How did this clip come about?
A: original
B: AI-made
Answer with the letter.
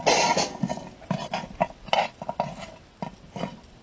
A